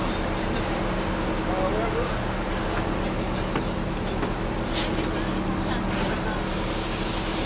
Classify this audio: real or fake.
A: real